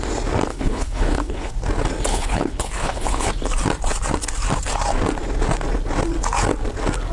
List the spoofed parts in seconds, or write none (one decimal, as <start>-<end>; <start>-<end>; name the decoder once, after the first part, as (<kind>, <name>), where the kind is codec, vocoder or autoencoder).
0.5-1.5 (codec, HILCodec); 2.1-3.3